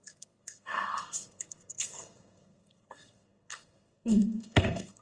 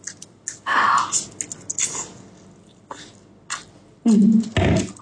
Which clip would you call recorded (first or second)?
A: second